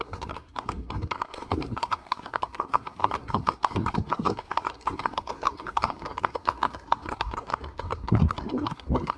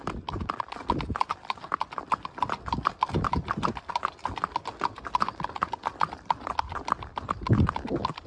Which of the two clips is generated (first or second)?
first